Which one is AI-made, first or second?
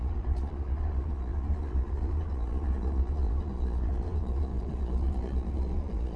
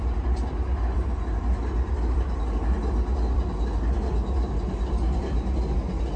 first